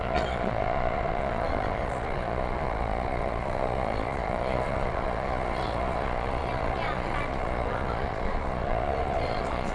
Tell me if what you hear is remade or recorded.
remade